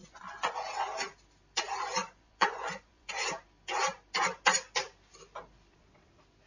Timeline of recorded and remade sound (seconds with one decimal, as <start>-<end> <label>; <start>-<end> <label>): 0.0-0.5 remade; 0.5-2.0 recorded; 2.0-3.1 remade; 3.1-6.5 recorded

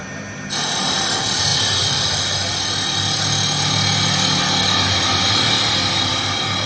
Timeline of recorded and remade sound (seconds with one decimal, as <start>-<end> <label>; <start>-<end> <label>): 0.0-6.7 recorded

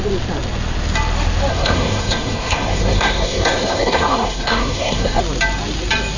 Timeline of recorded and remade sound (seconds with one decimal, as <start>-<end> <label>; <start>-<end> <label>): 0.0-1.5 recorded; 1.5-5.2 remade; 5.2-6.2 recorded

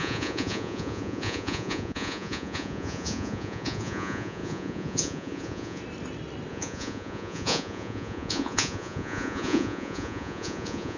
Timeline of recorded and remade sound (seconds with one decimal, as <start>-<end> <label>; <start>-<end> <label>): 0.0-5.8 remade; 5.8-6.5 recorded; 6.5-11.0 remade